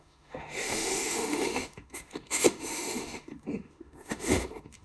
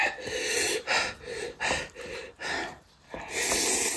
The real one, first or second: second